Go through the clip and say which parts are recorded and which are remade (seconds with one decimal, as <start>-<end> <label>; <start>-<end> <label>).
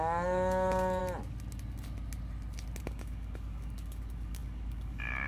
0.0-1.0 remade; 1.0-2.8 recorded; 2.8-5.3 remade